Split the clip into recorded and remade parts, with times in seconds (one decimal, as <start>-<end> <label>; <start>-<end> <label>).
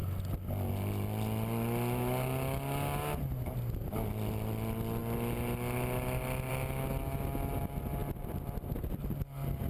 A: 0.0-8.0 recorded; 8.0-9.0 remade; 9.0-9.7 recorded